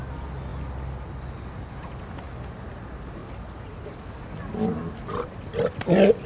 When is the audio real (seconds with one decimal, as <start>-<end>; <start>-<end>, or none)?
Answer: 0.0-6.3